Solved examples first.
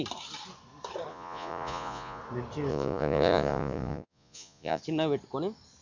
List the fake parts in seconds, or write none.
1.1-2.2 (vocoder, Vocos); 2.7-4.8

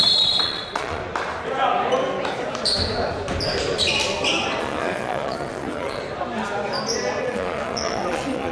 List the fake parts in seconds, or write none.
0.0-1.0 (vocoder, Vocos); 4.6-6.0; 7.2-8.5

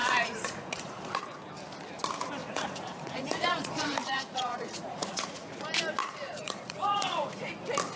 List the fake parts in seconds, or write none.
0.0-1.2 (vocoder, Vocos); 2.4-5.5; 6.0-7.5

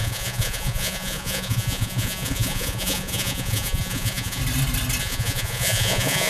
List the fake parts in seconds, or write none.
0.0-4.4 (vocoder, Vocos); 5.0-6.3